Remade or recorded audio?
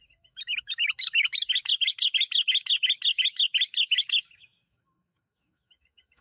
remade